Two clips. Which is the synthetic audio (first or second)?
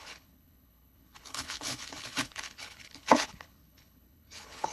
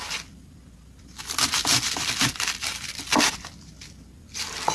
first